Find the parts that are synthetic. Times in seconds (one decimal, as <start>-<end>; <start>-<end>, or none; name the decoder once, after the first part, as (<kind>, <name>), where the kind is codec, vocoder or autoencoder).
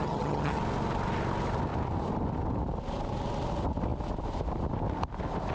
0.0-0.6 (vocoder, HiFi-GAN)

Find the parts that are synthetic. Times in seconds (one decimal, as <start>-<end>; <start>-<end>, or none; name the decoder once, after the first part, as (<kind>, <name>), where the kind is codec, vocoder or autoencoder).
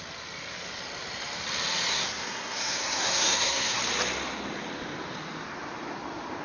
1.9-3.8 (codec, SNAC)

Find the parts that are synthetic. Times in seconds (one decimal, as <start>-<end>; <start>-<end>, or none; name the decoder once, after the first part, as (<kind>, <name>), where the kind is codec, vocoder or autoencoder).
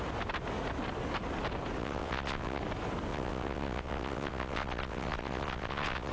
1.8-2.6 (vocoder, WaveNeXt); 3.1-6.1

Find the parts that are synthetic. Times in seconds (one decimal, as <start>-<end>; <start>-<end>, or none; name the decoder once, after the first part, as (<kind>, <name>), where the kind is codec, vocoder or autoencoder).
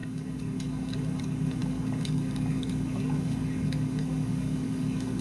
0.0-5.2 (codec, DAC)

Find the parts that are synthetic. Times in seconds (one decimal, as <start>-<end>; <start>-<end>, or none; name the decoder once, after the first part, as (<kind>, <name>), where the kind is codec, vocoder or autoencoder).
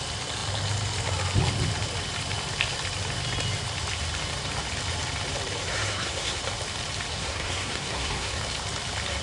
5.6-6.4 (codec, SNAC); 7.1-8.4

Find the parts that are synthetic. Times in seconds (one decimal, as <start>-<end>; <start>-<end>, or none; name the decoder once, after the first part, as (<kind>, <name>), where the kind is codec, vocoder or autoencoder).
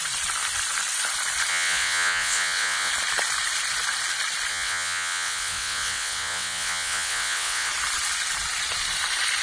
1.5-2.9 (vocoder, WaveNeXt); 4.5-7.7